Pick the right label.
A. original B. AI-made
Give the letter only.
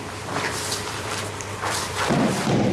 B